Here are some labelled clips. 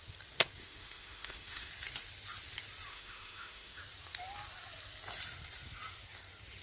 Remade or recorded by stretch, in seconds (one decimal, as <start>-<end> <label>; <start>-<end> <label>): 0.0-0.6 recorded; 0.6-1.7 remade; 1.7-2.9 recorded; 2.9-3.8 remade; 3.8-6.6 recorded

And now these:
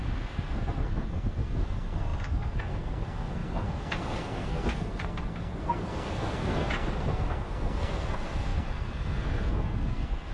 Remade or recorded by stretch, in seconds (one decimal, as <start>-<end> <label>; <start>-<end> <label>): 0.0-10.3 remade

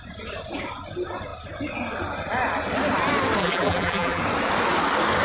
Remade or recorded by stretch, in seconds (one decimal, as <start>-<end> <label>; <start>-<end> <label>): 0.0-3.4 recorded; 3.4-4.2 remade; 4.2-5.2 recorded

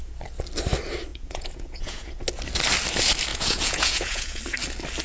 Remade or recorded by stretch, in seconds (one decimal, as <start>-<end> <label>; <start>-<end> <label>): 0.0-1.1 recorded; 1.1-2.2 remade; 2.2-3.3 recorded; 3.3-4.4 remade; 4.4-5.0 recorded

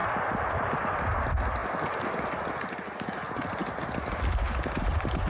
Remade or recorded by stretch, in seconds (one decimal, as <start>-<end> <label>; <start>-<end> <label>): 0.0-5.3 recorded

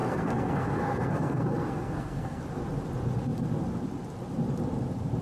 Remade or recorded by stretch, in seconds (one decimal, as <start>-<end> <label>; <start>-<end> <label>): 0.0-2.4 remade; 2.4-5.2 recorded

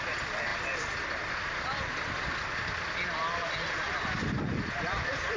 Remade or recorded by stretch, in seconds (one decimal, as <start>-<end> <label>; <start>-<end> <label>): 0.0-5.4 recorded

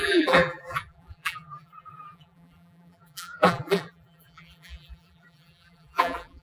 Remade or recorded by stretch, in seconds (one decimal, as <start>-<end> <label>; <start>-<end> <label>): 0.0-6.4 remade